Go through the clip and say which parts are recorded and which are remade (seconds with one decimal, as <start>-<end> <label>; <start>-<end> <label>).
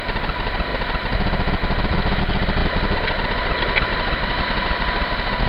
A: 0.0-5.5 recorded